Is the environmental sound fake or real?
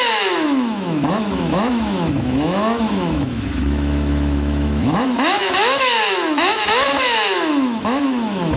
fake